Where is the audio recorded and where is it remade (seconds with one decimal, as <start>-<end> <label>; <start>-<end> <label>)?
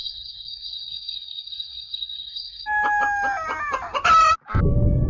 0.0-2.6 remade; 2.6-5.1 recorded